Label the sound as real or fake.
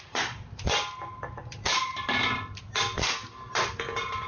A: real